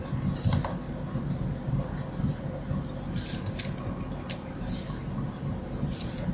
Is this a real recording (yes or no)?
yes